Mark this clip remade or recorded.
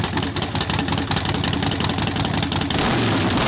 recorded